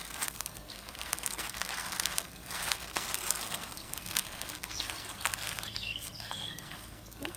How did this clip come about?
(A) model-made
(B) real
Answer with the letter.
A